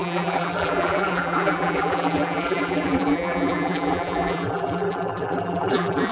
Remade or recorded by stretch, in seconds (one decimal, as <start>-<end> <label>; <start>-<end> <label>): 0.0-6.1 remade

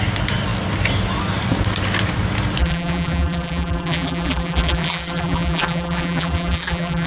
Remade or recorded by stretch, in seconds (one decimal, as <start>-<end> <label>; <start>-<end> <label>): 0.0-2.6 recorded; 2.6-7.1 remade

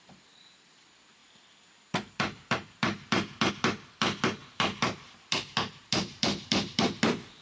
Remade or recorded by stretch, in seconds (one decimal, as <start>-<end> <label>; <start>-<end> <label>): 0.0-1.2 recorded; 1.2-3.5 remade; 3.5-4.4 recorded; 4.4-6.7 remade; 6.7-7.4 recorded

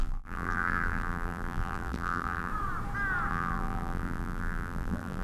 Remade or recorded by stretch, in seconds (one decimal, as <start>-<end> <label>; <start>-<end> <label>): 0.0-2.5 remade; 2.5-3.3 recorded; 3.3-5.2 remade

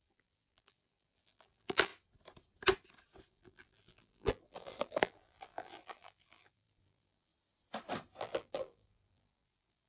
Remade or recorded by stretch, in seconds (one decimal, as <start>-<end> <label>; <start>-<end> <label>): 0.0-1.9 remade; 1.9-3.3 recorded; 3.3-7.3 remade; 7.3-8.2 recorded; 8.2-9.9 remade

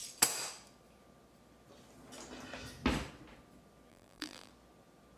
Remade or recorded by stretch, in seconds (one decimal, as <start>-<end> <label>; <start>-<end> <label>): 0.0-3.9 recorded; 3.9-4.5 remade; 4.5-5.2 recorded